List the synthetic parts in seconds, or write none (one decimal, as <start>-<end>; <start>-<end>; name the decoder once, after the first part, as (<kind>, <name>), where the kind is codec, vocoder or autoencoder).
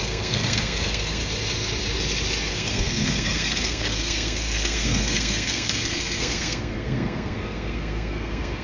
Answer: 0.0-1.2 (codec, SNAC); 2.5-8.6